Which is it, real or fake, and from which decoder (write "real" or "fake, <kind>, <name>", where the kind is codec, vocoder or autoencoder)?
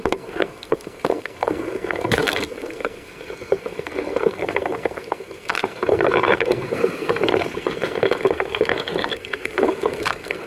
fake, codec, SNAC